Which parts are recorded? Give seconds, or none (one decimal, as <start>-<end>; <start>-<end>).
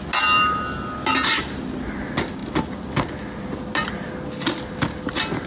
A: 0.0-5.5